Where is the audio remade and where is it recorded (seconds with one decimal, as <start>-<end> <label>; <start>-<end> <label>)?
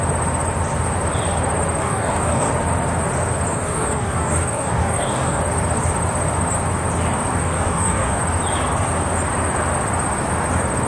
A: 0.0-1.8 recorded; 1.8-2.5 remade; 2.5-3.5 recorded; 3.5-5.4 remade; 5.4-7.4 recorded; 7.4-8.2 remade; 8.2-10.9 recorded